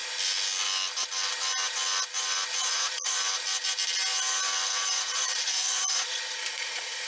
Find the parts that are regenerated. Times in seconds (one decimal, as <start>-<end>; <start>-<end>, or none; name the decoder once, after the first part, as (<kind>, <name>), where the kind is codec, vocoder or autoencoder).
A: 2.6-3.2 (vocoder, Vocos); 4.9-7.1